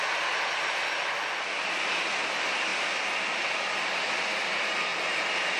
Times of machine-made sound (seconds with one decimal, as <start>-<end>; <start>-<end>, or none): 4.9-5.6